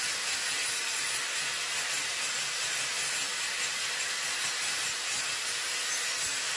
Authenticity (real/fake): real